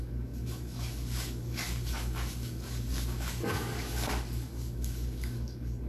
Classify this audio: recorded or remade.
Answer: remade